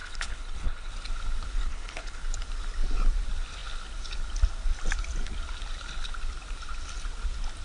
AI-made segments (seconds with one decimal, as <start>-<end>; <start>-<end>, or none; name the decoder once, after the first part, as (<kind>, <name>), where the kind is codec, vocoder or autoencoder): 0.0-0.9 (codec, HILCodec); 1.6-2.2